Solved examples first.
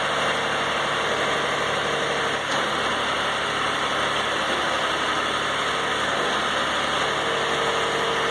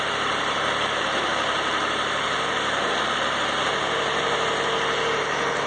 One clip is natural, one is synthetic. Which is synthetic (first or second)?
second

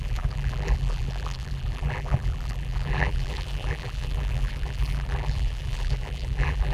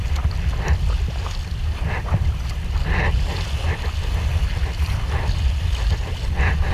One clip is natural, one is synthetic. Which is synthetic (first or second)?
first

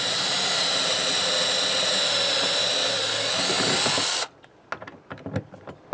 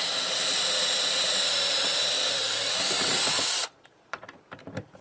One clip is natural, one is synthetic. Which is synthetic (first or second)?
second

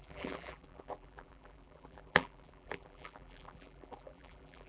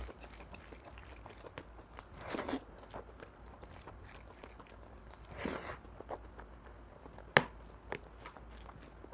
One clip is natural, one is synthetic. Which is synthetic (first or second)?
first